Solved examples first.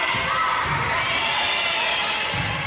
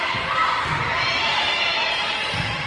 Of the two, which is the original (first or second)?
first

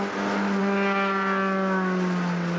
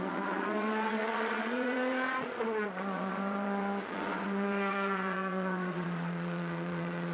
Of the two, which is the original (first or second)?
first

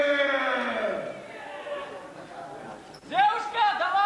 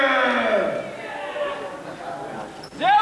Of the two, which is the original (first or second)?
second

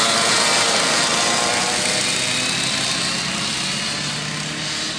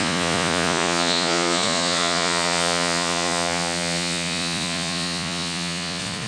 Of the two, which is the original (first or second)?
first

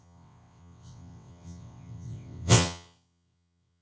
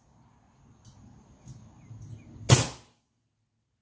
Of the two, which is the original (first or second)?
second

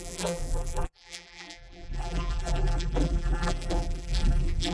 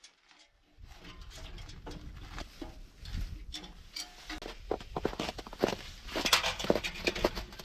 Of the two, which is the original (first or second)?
second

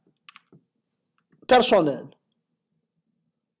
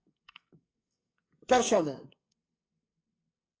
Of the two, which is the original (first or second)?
first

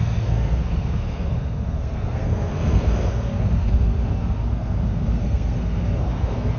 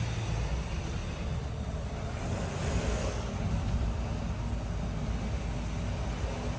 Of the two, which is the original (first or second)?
second